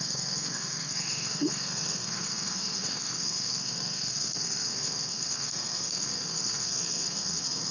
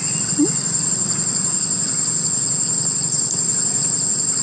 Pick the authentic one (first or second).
second